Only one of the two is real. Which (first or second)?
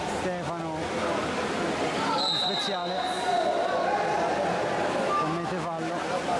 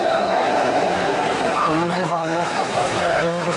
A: first